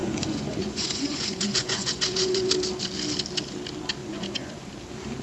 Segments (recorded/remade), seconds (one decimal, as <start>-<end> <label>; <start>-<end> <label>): 0.0-2.5 remade; 2.5-4.0 recorded; 4.0-4.7 remade; 4.7-5.2 recorded